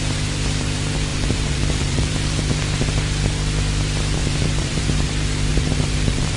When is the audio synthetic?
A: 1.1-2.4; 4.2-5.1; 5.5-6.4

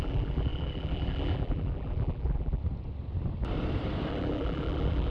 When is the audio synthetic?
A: 0.0-2.6; 4.1-5.1

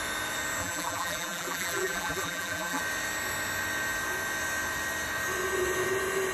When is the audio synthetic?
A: 0.6-2.8

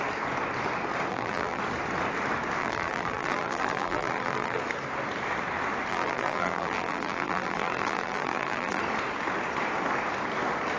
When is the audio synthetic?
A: 1.1-1.6; 2.6-4.6; 5.9-8.8

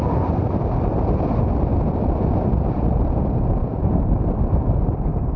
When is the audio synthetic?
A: 1.7-3.1

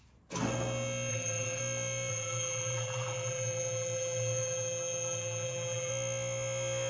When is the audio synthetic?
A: 1.1-1.6; 2.1-5.9

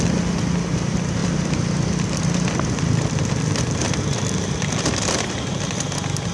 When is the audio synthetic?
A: 1.2-5.0

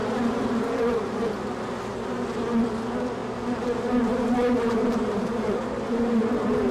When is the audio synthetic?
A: 0.0-1.2; 3.2-6.7